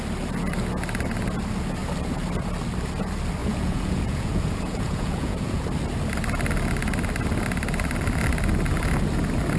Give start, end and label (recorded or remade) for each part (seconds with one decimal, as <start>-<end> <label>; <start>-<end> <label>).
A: 0.0-3.4 recorded; 3.4-5.6 remade; 5.6-9.6 recorded